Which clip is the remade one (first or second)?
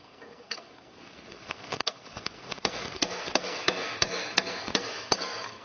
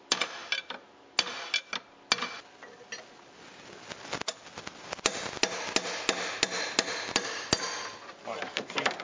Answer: first